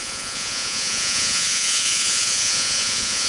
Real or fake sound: fake